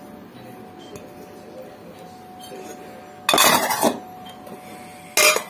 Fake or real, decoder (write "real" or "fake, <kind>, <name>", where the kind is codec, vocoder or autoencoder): real